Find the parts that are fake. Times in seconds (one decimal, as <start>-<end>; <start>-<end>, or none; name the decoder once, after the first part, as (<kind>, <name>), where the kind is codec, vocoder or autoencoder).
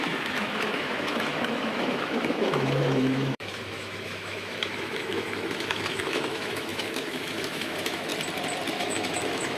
0.0-8.1 (autoencoder, DAC-VAE); 8.7-9.6